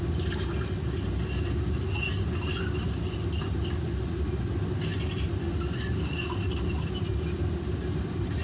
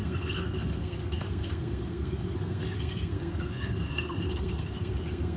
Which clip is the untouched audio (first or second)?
first